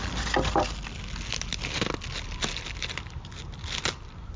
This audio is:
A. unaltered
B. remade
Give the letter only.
A